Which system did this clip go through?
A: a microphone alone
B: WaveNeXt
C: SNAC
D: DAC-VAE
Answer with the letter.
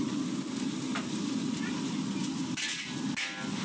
A